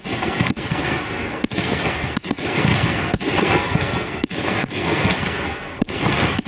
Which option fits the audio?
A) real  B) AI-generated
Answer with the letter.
B